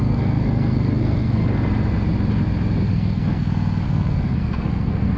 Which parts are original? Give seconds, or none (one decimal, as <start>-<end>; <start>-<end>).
1.4-2.9